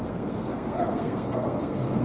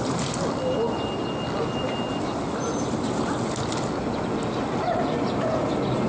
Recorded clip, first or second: second